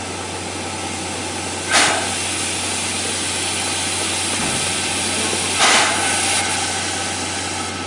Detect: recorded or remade recorded